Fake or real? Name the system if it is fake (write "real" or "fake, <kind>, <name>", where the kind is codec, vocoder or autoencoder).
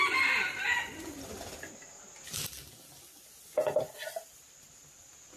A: real